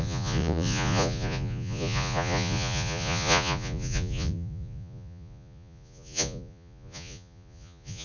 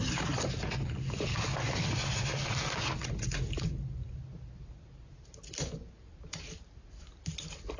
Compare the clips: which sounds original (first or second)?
second